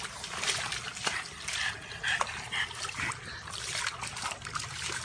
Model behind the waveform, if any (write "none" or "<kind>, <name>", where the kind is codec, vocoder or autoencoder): none